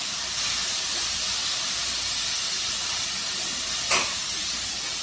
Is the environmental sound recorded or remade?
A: recorded